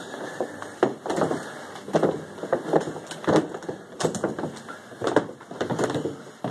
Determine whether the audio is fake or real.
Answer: real